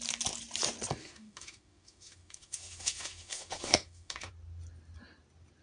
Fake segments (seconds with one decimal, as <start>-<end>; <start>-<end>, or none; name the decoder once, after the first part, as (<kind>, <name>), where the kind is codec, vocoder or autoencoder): 1.0-4.3 (autoencoder, DAC-VAE)